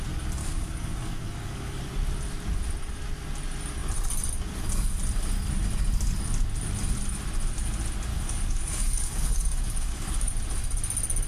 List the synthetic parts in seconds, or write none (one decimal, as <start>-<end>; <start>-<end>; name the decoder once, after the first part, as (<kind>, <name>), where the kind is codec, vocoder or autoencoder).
0.4-1.8 (codec, DAC); 8.1-10.3